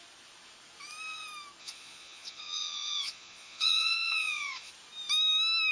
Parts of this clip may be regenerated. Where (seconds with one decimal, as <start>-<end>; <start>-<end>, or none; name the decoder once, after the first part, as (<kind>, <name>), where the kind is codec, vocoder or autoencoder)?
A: 1.6-4.7 (vocoder, Vocos)